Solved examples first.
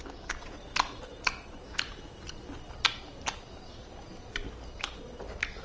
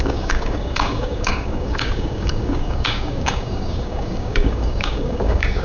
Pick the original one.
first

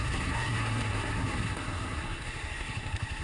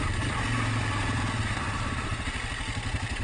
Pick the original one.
second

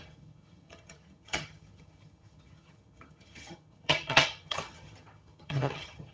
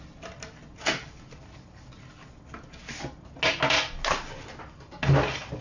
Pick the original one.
second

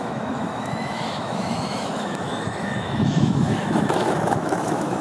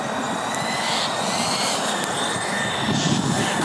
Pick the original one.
second